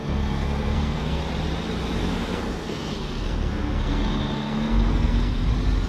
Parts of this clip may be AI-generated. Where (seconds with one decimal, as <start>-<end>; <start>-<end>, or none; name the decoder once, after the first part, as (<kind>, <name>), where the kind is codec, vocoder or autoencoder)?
0.0-1.2 (codec, SNAC); 2.0-5.5